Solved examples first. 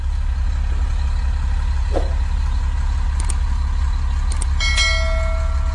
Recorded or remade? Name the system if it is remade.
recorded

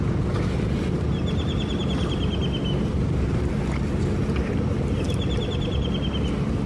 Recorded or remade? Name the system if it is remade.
recorded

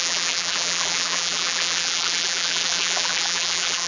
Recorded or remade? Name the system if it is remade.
remade, vocoder, BigVGAN v2